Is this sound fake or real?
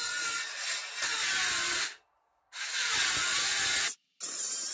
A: real